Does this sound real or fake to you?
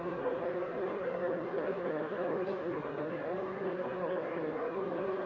fake